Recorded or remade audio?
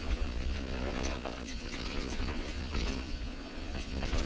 remade